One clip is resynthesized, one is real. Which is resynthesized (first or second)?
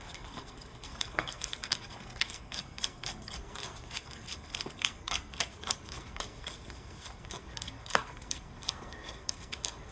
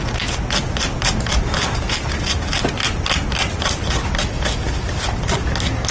first